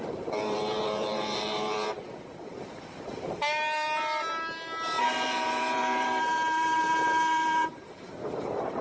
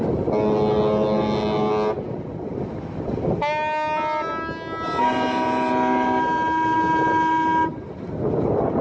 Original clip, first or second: second